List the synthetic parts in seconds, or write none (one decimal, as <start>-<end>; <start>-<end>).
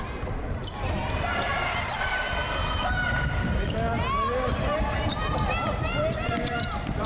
0.0-2.4; 5.5-7.1